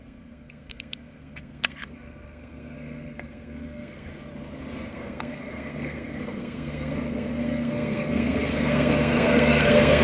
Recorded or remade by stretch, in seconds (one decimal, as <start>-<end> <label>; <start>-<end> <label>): 0.0-4.1 remade; 4.1-4.9 recorded; 4.9-10.0 remade